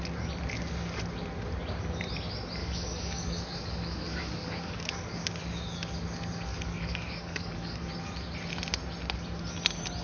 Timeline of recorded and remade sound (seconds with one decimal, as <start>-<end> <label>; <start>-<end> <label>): 0.0-2.6 recorded; 2.6-4.9 remade; 4.9-6.5 recorded; 6.5-7.9 remade; 7.9-10.0 recorded